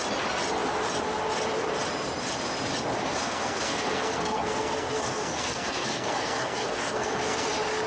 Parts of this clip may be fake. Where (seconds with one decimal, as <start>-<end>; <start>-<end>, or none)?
3.2-7.5